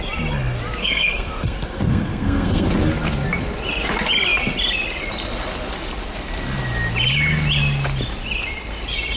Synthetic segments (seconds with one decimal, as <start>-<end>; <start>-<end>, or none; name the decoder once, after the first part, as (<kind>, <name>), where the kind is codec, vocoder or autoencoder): 0.8-2.7 (codec, SNAC)